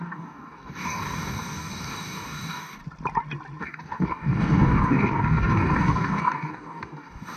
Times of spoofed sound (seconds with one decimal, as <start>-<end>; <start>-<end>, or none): 0.0-2.8; 3.6-7.4